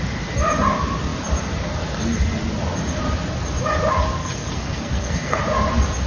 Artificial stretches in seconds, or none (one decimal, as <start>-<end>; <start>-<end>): 4.2-5.4